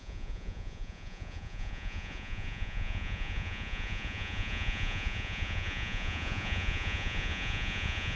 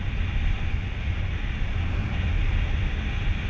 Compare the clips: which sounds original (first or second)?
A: second